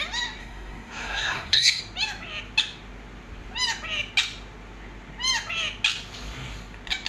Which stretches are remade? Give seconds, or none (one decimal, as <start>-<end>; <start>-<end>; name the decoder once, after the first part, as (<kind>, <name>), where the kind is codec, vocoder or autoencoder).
0.4-1.8 (codec, SNAC)